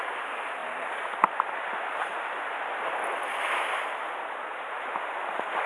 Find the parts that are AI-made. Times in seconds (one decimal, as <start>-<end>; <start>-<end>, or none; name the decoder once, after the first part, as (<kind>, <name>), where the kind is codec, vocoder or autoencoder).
none